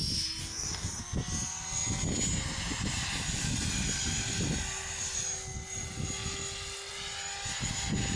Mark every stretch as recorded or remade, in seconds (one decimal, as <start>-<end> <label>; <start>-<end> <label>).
0.0-0.4 recorded; 0.4-1.0 remade; 1.0-8.2 recorded